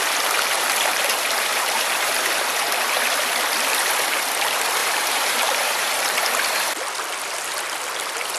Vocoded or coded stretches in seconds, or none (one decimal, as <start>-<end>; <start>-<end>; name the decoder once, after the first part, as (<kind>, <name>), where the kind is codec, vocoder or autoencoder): 0.9-2.1 (vocoder, BigVGAN v2); 4.8-5.9